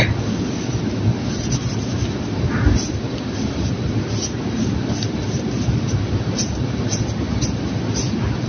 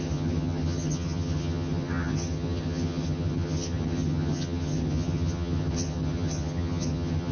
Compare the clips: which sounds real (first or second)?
first